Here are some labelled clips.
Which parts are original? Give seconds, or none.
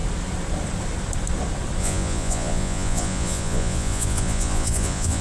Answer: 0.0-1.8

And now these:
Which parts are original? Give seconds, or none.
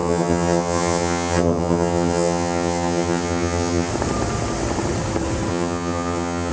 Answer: 3.9-5.5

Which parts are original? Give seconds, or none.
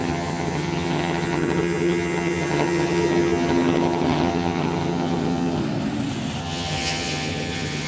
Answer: 5.6-6.4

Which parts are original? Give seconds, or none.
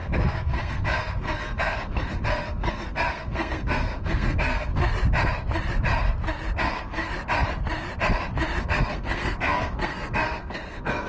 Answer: 4.8-6.6; 7.1-8.6